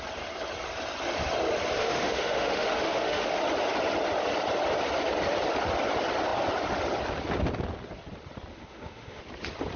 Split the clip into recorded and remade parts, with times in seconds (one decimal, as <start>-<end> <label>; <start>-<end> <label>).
0.0-1.8 recorded; 1.8-3.4 remade; 3.4-8.5 recorded; 8.5-9.2 remade; 9.2-9.8 recorded